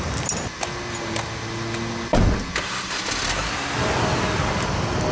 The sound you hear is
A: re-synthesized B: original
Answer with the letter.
B